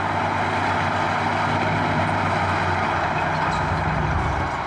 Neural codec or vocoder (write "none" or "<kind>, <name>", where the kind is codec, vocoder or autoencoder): none